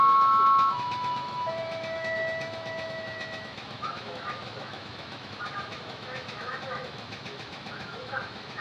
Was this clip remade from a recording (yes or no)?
yes